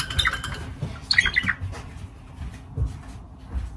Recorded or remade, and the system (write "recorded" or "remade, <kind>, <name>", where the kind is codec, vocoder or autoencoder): recorded